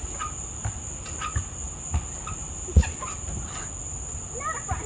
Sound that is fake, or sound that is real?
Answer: real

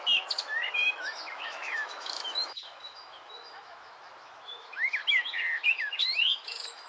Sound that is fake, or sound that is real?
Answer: fake